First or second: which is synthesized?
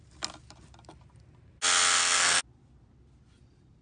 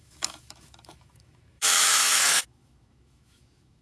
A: second